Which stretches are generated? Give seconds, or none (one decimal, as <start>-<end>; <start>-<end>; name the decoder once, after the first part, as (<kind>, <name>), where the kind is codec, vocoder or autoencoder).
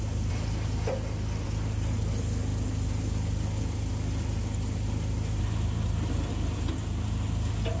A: none